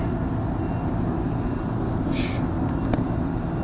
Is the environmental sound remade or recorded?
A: recorded